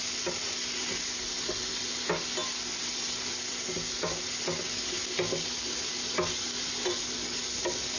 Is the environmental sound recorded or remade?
recorded